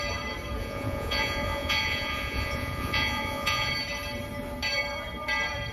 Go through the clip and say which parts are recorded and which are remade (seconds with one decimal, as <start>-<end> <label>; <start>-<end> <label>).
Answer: 0.0-0.6 recorded; 0.6-3.7 remade; 3.7-5.7 recorded